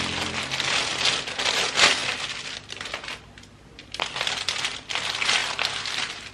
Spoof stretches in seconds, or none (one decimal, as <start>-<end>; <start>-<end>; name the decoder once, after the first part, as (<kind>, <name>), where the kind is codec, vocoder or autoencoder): none